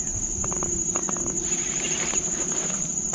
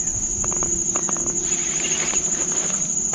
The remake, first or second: first